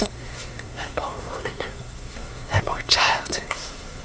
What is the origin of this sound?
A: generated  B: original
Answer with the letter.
A